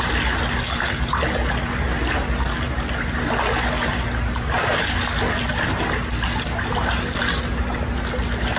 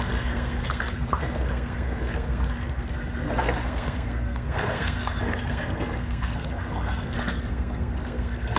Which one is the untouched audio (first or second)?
first